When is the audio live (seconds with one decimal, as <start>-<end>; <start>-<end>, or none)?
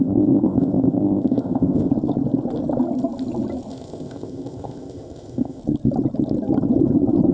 1.9-3.7; 5.6-7.3